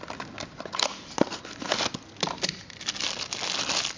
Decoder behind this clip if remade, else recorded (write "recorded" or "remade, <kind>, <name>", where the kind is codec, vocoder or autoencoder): recorded